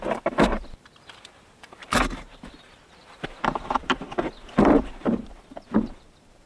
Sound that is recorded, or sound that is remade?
remade